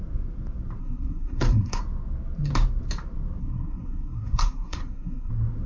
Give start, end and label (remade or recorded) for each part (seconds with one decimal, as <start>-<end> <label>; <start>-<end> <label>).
0.0-0.8 recorded; 0.8-1.8 remade; 1.8-3.4 recorded; 3.4-5.3 remade; 5.3-5.7 recorded

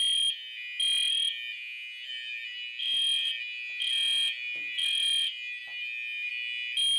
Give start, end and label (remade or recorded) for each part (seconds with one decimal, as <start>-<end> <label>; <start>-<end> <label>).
0.0-7.0 recorded

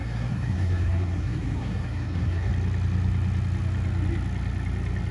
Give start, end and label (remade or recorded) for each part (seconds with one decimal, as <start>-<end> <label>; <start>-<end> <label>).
0.0-2.5 remade; 2.5-5.1 recorded

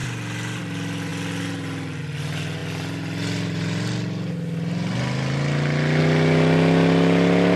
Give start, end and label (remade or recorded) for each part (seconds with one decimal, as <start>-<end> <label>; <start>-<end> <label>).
0.0-7.6 recorded

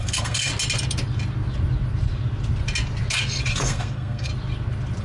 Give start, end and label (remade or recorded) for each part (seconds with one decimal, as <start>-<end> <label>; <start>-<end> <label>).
0.0-0.5 remade; 0.5-3.5 recorded; 3.5-4.3 remade; 4.3-5.0 recorded